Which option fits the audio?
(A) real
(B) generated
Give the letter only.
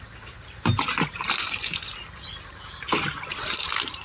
A